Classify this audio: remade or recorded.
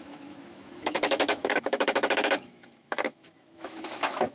remade